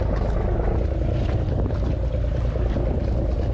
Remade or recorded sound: recorded